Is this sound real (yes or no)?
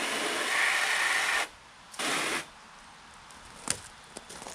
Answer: yes